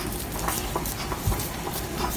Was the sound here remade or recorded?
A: recorded